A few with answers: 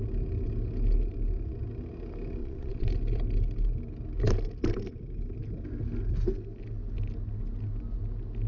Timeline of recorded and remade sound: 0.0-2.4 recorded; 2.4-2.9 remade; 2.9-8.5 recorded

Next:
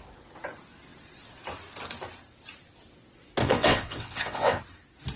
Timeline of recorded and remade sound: 0.0-3.4 recorded; 3.4-4.6 remade; 4.6-5.2 recorded

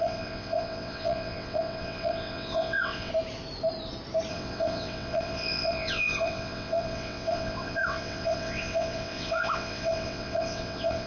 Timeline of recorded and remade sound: 0.0-3.1 remade; 3.1-4.3 recorded; 4.3-11.1 remade

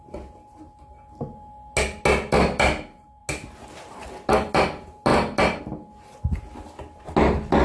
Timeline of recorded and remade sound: 0.0-7.6 recorded

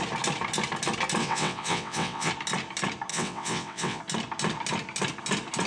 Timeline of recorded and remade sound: 0.0-1.2 recorded; 1.2-2.3 remade; 2.3-3.1 recorded; 3.1-4.0 remade; 4.0-5.7 recorded

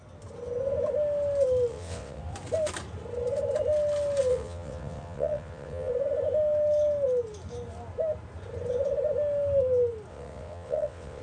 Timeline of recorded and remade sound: 0.0-1.7 recorded; 1.7-2.2 remade; 2.2-4.3 recorded; 4.3-5.9 remade; 5.9-10.1 recorded; 10.1-11.2 remade

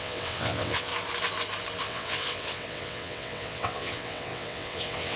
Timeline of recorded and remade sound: 0.0-0.9 remade; 0.9-1.8 recorded; 1.8-5.2 remade

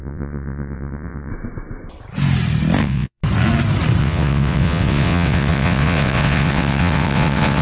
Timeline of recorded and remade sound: 0.0-1.3 remade; 1.3-2.8 recorded; 2.8-3.2 remade; 3.2-4.0 recorded; 4.0-7.6 remade